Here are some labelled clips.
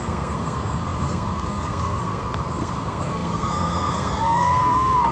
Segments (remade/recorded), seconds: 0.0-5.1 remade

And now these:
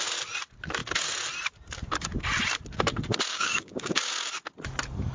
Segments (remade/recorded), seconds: 0.0-3.3 recorded; 3.3-4.1 remade; 4.1-5.1 recorded

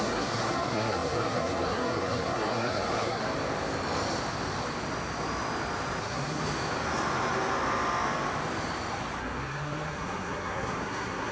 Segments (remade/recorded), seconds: 0.0-3.2 remade; 3.2-6.0 recorded; 6.0-6.4 remade; 6.4-9.2 recorded; 9.2-11.3 remade